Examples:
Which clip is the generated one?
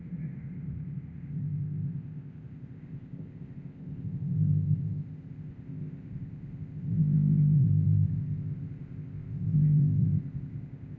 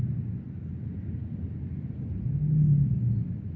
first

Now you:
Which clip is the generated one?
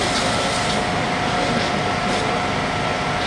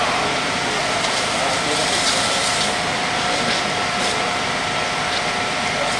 second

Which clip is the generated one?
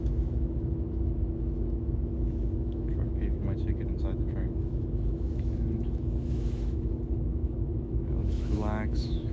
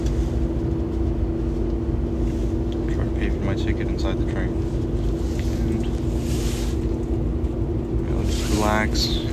first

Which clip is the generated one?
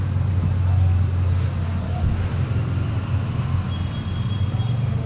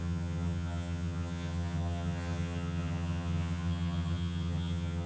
second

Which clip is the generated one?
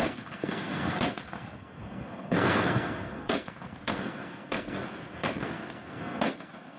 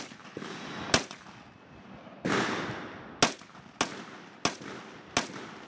first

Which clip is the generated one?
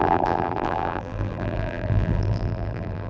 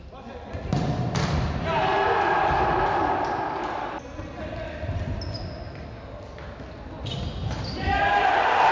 first